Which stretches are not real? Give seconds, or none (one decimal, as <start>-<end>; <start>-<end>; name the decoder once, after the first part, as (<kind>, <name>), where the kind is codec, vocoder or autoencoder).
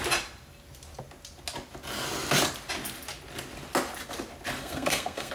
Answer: 4.6-5.3 (codec, SNAC)